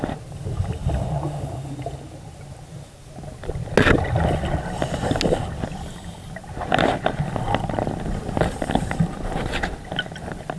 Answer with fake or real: real